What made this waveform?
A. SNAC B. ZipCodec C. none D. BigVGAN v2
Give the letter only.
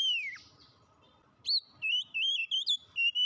C